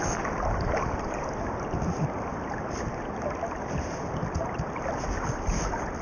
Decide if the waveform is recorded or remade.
recorded